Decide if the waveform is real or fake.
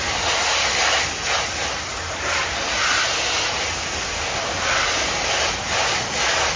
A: real